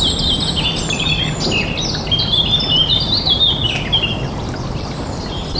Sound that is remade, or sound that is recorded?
recorded